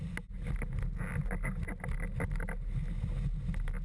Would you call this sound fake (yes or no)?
no